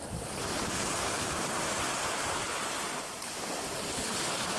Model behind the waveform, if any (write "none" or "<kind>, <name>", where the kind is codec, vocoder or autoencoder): none